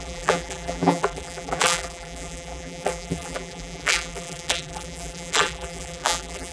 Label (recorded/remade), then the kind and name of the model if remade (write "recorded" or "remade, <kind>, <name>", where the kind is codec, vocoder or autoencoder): remade, vocoder, BigVGAN v2